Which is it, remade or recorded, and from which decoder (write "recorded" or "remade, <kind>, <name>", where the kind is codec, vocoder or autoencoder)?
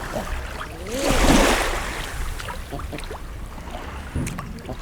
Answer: recorded